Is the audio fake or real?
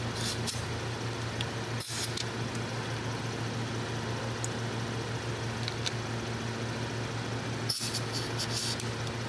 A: real